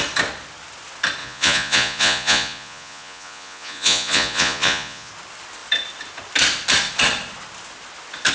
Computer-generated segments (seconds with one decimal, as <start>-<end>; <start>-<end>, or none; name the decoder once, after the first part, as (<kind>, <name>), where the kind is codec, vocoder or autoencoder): 1.2-5.1 (vocoder, Vocos)